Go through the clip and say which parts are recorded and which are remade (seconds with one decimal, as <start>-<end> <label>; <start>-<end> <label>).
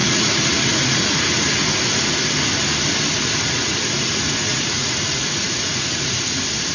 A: 0.0-1.4 remade; 1.4-3.6 recorded; 3.6-6.7 remade